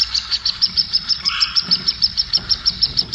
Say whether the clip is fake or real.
fake